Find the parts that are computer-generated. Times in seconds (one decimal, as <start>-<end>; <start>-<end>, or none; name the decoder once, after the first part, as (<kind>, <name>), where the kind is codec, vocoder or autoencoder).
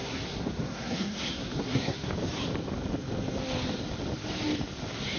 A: 0.0-2.1 (codec, SNAC)